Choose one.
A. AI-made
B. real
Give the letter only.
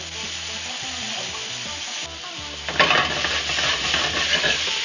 B